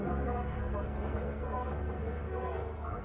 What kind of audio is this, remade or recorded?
remade